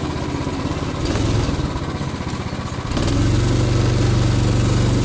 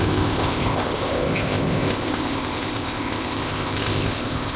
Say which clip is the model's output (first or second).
second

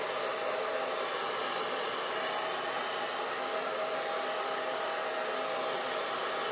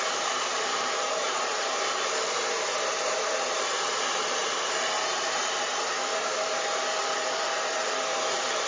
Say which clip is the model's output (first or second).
second